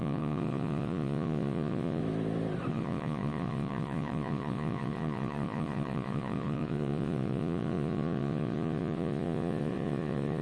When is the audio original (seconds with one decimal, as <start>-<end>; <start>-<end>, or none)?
2.0-2.7